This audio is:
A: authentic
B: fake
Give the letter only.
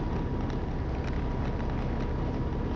A